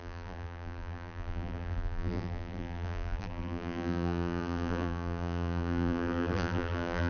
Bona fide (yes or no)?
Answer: no